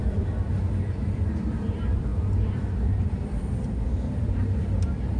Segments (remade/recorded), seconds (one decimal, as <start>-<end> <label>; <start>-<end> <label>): 0.0-5.2 remade